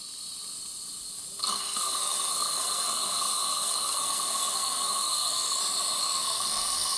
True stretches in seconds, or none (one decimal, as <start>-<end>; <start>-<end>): 0.0-1.4; 5.6-6.0